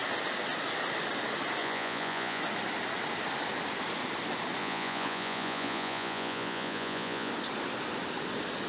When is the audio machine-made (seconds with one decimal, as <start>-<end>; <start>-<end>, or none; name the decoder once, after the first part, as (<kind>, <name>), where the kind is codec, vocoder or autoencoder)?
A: 1.6-2.4 (vocoder, Vocos); 4.6-7.3